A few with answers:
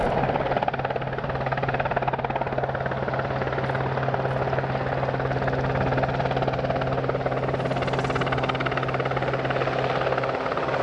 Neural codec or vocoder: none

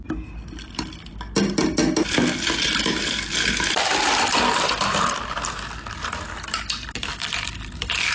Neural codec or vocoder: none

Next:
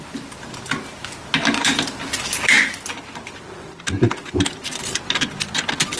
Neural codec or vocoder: none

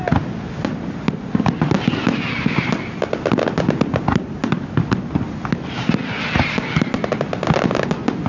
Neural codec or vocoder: none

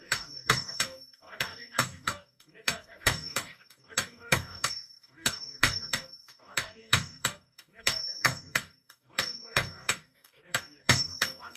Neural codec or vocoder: codec, DAC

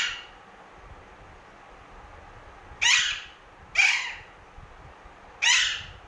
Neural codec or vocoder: none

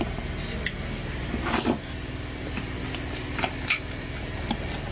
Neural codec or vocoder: none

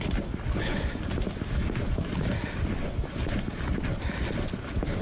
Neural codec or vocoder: none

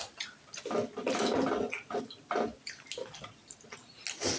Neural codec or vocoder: none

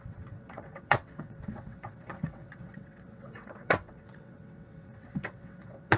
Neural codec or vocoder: vocoder, WaveNeXt